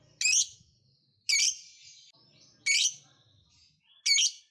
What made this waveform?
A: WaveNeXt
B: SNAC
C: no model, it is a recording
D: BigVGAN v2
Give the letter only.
C